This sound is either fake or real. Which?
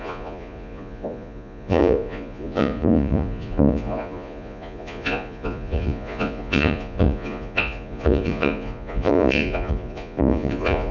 fake